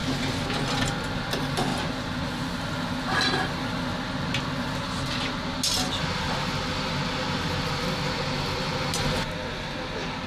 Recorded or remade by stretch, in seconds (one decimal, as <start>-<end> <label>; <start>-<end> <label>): 0.0-10.3 recorded